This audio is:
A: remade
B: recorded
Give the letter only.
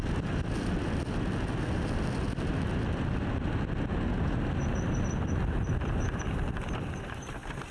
B